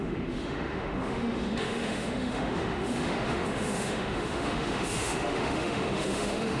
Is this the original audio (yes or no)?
no